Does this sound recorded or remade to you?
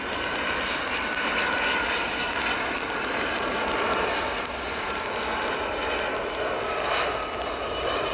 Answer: recorded